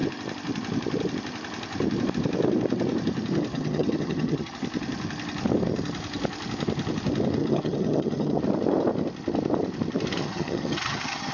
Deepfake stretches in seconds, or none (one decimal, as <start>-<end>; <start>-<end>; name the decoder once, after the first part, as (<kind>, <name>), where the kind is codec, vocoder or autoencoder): 3.5-4.5 (vocoder, HiFi-GAN); 7.4-8.4; 10.2-11.3